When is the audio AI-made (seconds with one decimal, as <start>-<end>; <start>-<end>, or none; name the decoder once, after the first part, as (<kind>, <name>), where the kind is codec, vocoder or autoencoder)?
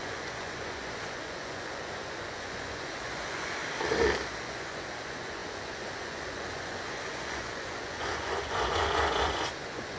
0.0-3.6 (vocoder, Vocos); 4.4-10.0